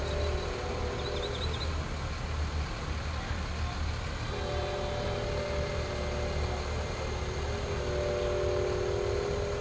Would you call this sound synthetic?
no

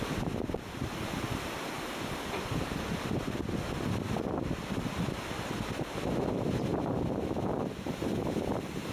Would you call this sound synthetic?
no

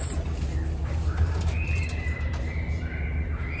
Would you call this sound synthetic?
no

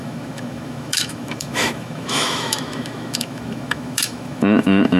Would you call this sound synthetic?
yes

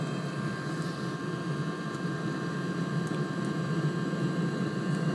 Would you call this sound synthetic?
no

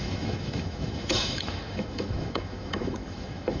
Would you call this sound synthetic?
yes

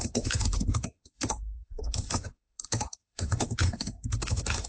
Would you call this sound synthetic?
yes